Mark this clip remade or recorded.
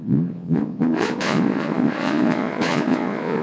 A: remade